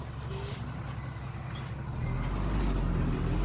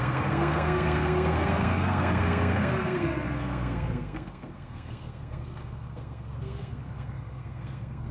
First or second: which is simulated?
second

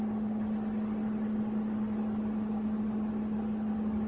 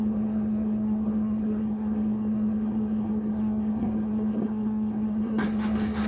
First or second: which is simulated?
second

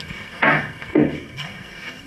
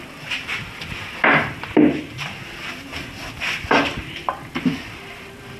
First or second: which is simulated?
first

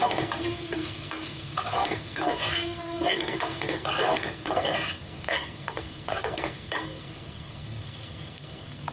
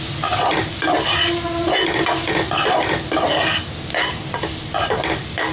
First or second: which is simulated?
first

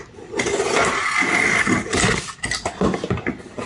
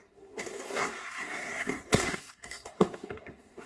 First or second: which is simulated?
second